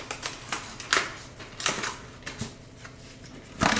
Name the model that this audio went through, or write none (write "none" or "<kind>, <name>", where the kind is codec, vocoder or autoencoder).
none